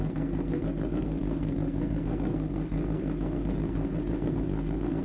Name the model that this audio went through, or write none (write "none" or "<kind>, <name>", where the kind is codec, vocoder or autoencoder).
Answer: codec, SNAC